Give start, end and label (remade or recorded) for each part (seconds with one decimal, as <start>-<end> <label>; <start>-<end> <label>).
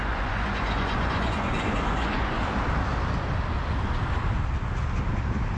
0.0-2.4 remade; 2.4-5.6 recorded